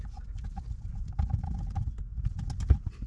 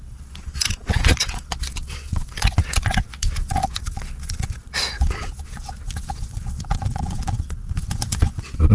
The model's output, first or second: second